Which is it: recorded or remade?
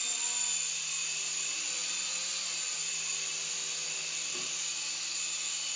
recorded